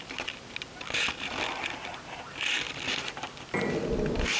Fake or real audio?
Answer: real